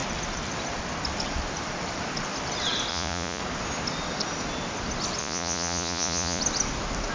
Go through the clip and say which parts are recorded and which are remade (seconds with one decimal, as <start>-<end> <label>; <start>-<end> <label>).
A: 0.0-2.9 recorded; 2.9-3.4 remade; 3.4-5.2 recorded; 5.2-6.4 remade; 6.4-7.1 recorded